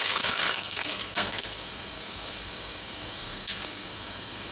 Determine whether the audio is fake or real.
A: fake